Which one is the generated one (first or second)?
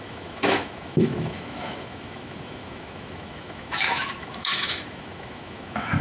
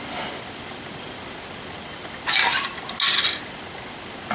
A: first